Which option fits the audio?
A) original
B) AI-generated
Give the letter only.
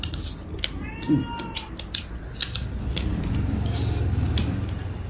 A